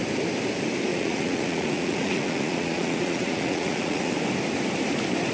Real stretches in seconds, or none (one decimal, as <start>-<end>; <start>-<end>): 0.0-0.9; 4.1-5.3